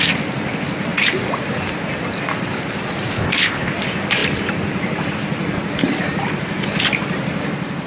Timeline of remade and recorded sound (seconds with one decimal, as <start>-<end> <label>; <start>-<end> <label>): 0.0-3.1 recorded; 3.1-3.7 remade; 3.7-7.9 recorded